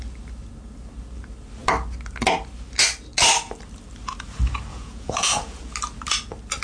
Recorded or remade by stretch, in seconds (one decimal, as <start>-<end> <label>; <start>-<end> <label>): 0.0-4.7 recorded; 4.7-5.6 remade; 5.6-6.6 recorded